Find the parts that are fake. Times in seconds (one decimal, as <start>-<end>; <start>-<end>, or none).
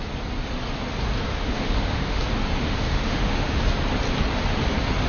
1.3-2.2; 2.6-3.6